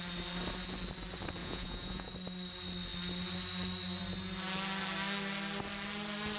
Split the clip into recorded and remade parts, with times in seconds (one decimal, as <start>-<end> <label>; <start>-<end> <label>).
0.0-1.4 recorded; 1.4-2.1 remade; 2.1-6.4 recorded